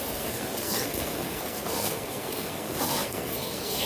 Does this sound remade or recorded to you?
remade